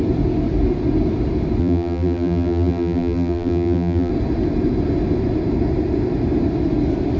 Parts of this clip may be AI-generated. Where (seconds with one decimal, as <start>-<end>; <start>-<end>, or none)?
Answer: 1.6-4.1